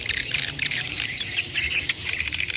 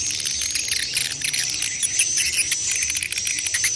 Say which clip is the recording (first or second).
second